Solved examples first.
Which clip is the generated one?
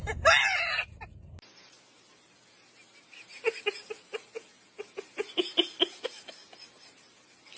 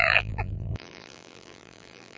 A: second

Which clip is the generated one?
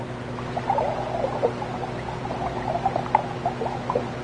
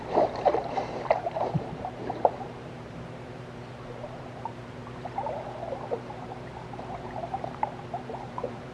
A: second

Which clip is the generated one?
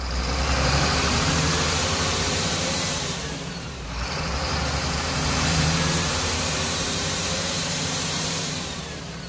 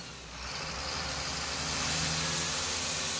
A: first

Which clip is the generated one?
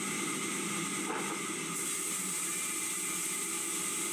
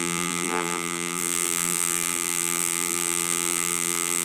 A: second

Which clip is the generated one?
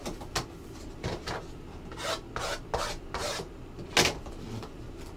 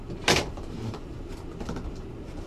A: second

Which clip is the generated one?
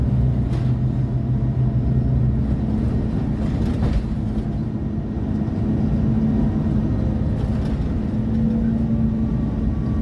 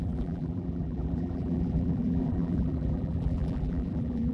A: second